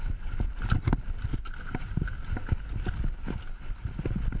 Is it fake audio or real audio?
real